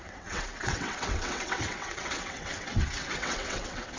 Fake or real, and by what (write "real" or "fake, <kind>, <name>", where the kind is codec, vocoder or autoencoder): fake, vocoder, WaveNeXt